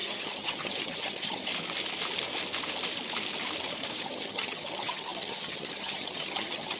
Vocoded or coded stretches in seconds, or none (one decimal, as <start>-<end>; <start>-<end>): 0.0-1.5; 4.0-6.8

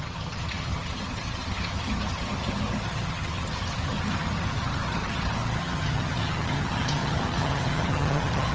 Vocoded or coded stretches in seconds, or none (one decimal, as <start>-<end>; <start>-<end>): 0.0-8.5